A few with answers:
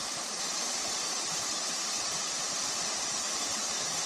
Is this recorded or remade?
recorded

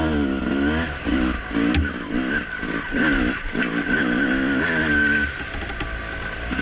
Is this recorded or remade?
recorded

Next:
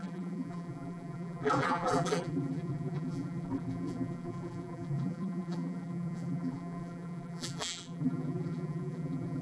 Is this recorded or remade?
remade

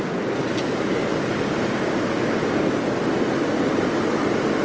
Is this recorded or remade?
recorded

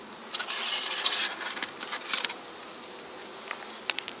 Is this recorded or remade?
recorded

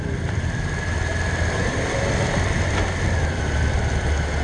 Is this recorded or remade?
recorded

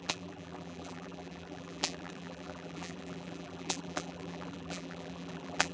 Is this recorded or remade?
remade